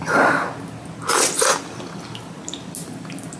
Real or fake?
real